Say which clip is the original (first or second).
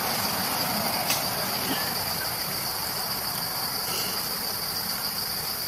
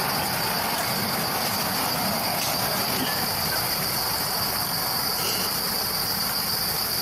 second